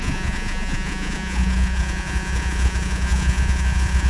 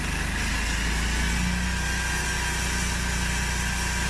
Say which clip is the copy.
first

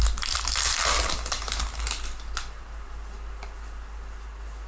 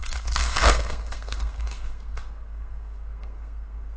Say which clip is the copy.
second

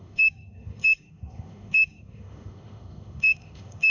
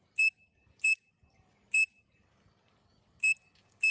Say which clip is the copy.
first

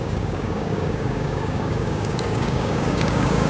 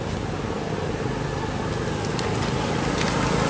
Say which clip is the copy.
first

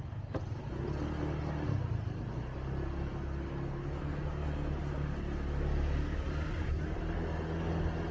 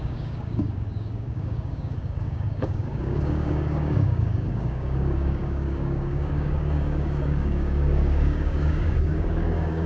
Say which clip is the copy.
second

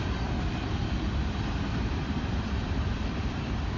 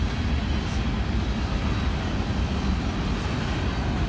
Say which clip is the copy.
first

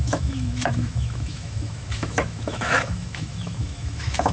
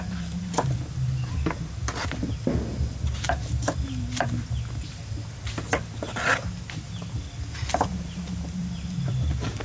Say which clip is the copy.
first